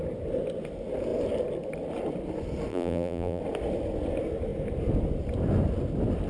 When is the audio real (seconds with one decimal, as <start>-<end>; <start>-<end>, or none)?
0.0-2.7; 3.4-6.3